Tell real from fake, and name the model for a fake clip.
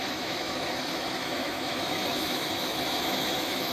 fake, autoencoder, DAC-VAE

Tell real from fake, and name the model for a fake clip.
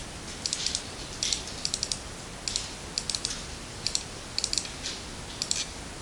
real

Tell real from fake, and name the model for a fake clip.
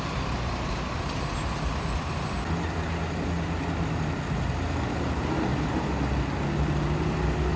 real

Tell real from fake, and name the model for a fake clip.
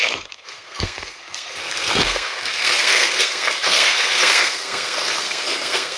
fake, codec, SNAC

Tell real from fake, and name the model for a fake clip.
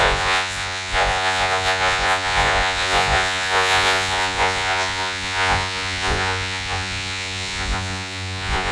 fake, vocoder, Vocos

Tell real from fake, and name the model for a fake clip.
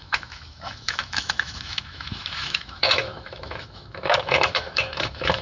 fake, autoencoder, DAC-VAE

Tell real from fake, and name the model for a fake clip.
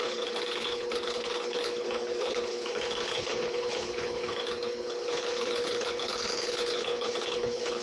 fake, codec, HILCodec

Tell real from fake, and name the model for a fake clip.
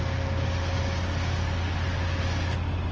real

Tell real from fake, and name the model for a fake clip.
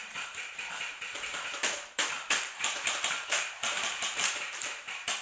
fake, vocoder, BigVGAN v2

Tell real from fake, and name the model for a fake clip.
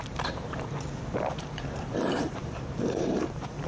fake, vocoder, BigVGAN v2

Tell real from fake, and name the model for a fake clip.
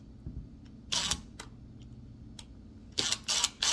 real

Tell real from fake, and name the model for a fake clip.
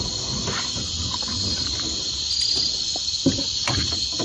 fake, vocoder, BigVGAN v2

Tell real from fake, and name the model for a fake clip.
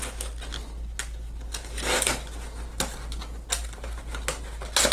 real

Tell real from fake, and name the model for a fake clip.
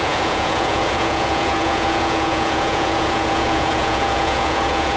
fake, vocoder, Vocos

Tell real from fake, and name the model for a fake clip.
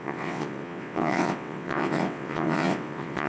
fake, vocoder, WaveNeXt